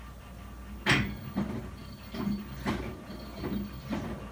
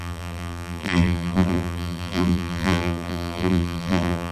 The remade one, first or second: second